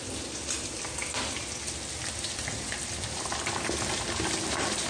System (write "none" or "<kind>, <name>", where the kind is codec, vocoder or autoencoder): none